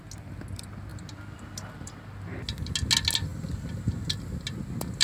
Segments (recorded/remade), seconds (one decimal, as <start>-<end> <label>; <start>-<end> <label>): 0.0-0.9 recorded; 0.9-2.4 remade; 2.4-5.0 recorded